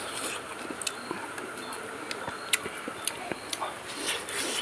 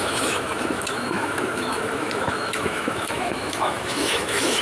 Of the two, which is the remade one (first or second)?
second